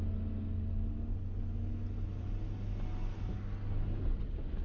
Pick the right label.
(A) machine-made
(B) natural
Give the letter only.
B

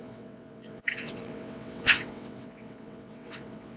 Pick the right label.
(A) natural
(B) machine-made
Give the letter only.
B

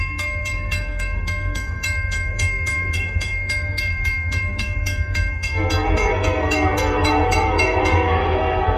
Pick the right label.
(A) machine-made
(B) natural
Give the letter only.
A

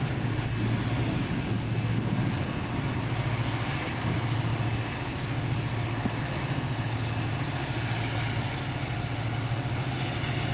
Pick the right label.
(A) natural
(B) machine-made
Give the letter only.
A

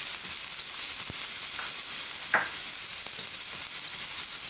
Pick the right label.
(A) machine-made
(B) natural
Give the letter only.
B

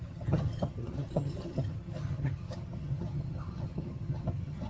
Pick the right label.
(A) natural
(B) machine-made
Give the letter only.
B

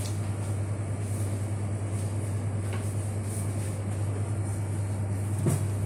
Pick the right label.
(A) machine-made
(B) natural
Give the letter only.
B